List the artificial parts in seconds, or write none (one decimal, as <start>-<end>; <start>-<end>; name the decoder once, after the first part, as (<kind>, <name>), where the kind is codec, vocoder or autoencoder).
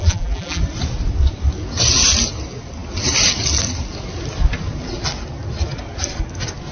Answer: 0.0-0.6 (vocoder, BigVGAN v2)